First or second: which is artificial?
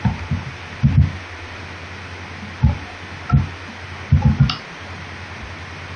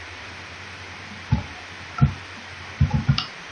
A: second